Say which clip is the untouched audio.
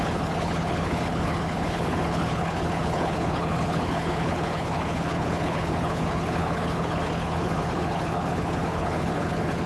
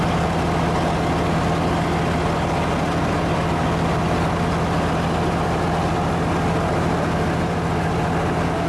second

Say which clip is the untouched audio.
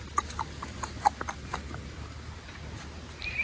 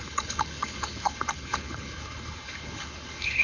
first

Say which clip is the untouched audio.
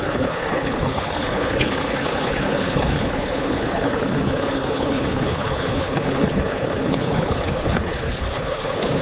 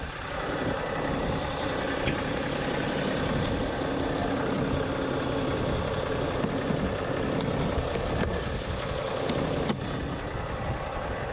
second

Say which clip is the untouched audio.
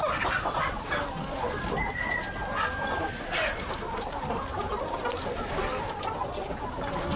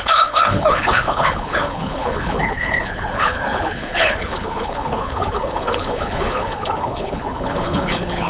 first